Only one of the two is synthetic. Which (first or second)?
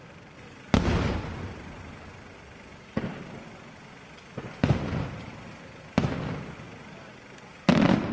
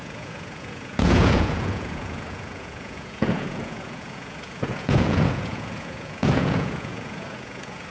second